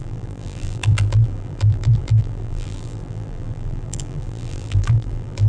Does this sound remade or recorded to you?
remade